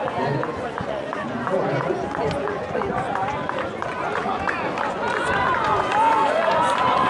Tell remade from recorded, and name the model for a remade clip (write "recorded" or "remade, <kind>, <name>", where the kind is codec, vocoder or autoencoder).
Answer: remade, vocoder, Vocos